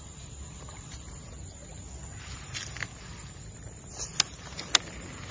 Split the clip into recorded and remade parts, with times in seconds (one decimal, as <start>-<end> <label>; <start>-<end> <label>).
0.0-5.3 recorded